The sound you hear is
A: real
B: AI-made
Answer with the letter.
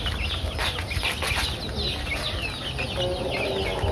A